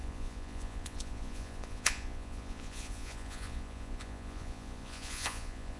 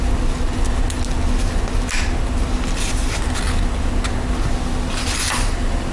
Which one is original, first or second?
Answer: second